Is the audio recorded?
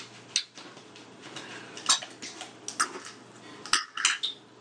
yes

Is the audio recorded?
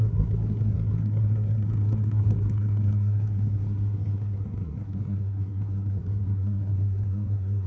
no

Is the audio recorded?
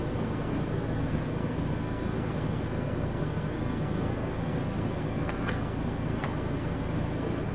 no